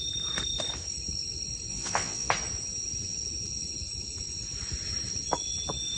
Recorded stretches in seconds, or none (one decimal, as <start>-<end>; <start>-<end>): 0.0-1.7; 2.3-6.0